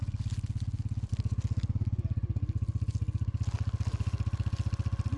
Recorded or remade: recorded